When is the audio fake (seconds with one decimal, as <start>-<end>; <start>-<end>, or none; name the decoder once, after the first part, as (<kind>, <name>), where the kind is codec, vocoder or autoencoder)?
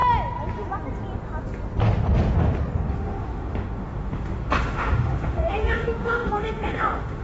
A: 2.9-7.2 (autoencoder, DAC-VAE)